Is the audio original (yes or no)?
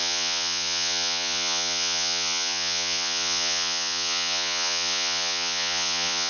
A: no